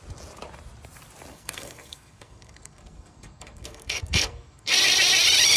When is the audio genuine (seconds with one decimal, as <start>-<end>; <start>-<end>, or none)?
0.0-1.3; 4.7-5.6